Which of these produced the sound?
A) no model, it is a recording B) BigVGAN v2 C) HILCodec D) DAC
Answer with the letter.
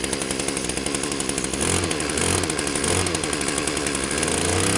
A